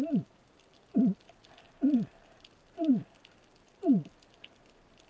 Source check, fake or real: real